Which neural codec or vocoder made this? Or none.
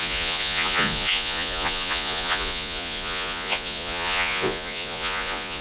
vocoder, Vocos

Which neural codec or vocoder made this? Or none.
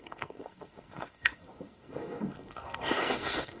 codec, SNAC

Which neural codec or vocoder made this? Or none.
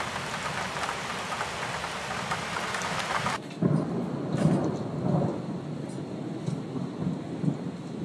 none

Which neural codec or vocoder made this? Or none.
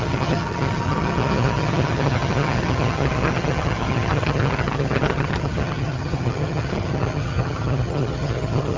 vocoder, HiFi-GAN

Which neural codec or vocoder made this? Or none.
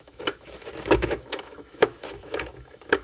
autoencoder, DAC-VAE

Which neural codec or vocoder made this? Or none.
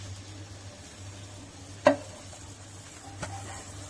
none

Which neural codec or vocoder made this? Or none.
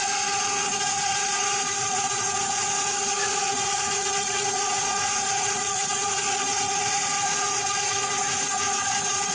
vocoder, Vocos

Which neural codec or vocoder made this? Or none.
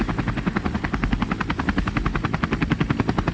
none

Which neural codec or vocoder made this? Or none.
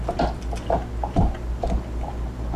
none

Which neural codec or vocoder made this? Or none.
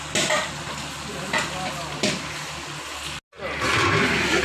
none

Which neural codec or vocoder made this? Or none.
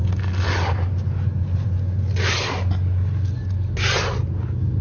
none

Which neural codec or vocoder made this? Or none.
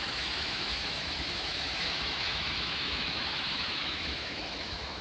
autoencoder, DAC-VAE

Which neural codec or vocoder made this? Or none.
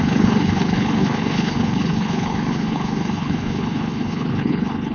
codec, HILCodec